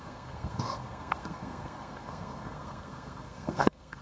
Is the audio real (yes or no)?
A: no